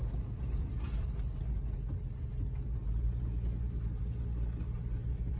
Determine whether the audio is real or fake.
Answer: real